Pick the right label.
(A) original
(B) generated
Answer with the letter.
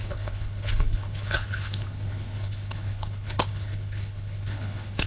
B